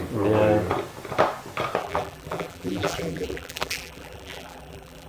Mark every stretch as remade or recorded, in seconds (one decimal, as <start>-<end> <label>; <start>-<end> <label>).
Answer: 0.0-1.8 recorded; 1.8-5.1 remade